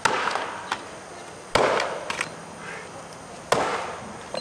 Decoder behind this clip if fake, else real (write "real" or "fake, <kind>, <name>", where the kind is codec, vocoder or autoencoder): real